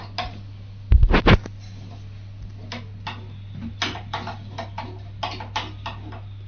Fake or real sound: real